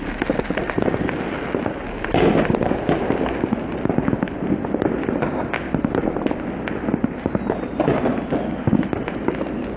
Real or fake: real